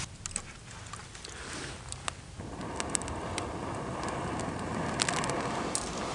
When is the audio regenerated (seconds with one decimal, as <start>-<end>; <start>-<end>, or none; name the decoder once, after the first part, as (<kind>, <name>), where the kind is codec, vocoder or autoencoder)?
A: none